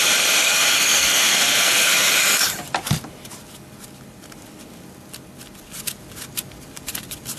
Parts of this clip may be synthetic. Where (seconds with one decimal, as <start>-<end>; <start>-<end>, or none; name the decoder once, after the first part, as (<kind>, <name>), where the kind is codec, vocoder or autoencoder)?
0.4-2.1 (codec, SNAC)